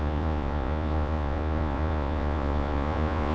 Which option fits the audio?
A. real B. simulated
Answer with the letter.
B